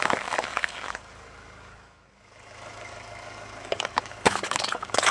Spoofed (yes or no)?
yes